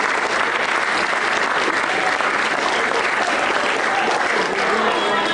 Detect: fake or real real